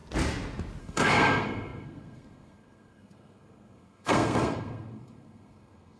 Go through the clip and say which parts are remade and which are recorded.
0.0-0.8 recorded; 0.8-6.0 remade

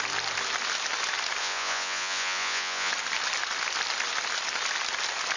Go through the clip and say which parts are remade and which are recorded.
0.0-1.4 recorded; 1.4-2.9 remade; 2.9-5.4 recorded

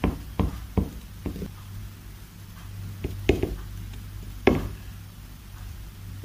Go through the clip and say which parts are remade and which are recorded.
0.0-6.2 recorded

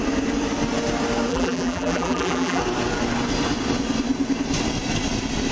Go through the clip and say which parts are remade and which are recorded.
0.0-1.3 recorded; 1.3-2.6 remade; 2.6-5.5 recorded